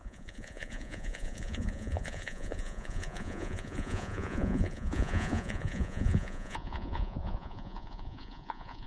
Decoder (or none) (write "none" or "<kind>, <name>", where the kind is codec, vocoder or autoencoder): vocoder, Vocos